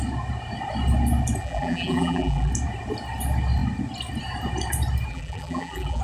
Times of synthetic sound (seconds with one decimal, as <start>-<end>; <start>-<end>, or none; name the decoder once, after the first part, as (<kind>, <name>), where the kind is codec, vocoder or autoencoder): 1.4-2.5 (vocoder, BigVGAN v2); 5.1-6.0